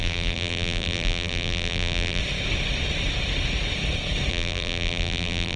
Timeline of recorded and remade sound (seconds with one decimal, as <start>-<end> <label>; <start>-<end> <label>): 0.0-2.2 remade; 2.2-4.3 recorded; 4.3-5.6 remade